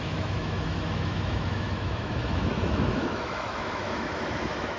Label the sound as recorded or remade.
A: remade